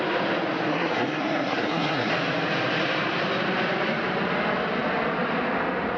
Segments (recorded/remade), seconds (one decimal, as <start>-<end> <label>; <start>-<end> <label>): 0.0-0.7 recorded; 0.7-2.1 remade; 2.1-6.0 recorded